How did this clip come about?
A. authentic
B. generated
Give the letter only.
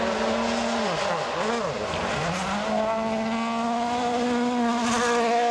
A